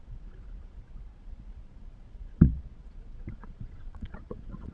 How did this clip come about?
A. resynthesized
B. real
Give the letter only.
A